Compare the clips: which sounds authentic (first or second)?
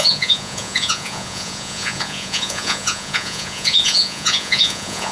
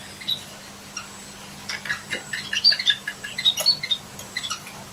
second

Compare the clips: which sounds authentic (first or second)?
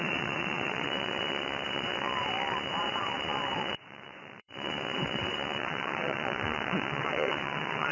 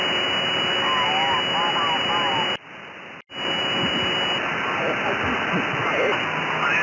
second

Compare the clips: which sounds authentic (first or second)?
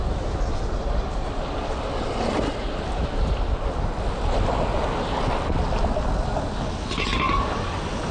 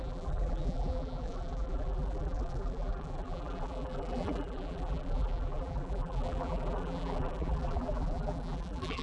first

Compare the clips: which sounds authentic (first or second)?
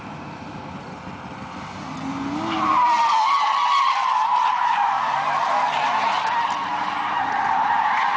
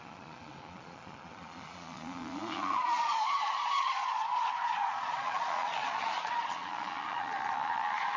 first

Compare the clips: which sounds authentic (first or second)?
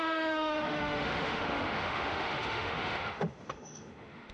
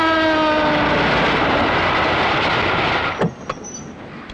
second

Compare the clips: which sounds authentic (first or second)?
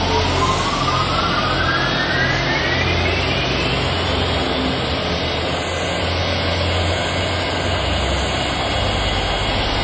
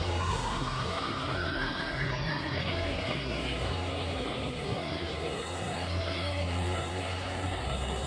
first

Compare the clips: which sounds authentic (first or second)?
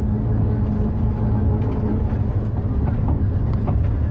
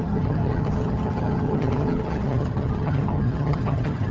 first